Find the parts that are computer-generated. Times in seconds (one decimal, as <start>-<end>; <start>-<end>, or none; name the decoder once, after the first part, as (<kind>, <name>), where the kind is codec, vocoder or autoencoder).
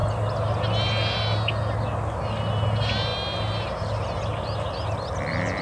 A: none